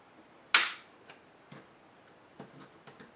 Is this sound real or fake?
real